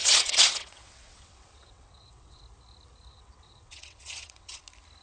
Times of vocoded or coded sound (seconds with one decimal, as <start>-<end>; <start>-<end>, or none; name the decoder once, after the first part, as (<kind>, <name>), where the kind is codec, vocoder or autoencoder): 0.0-2.4 (vocoder, WaveNeXt); 3.1-4.6